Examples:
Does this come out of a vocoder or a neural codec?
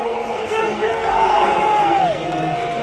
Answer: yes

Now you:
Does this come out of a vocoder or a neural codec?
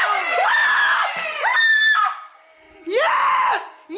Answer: no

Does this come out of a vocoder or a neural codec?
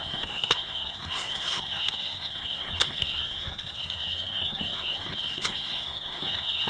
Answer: yes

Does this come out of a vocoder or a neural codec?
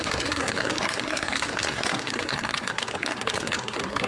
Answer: yes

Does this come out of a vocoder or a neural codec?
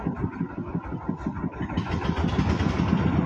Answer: no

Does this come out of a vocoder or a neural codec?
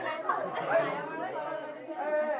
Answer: no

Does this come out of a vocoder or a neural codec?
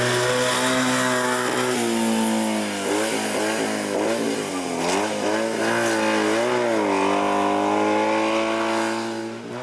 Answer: no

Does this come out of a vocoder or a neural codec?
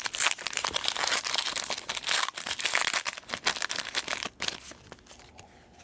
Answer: no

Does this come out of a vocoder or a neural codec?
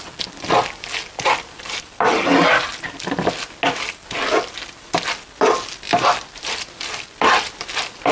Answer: no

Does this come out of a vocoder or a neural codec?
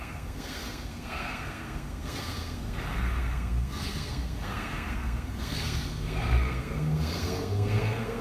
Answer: yes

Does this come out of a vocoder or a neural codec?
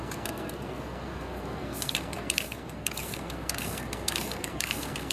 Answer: yes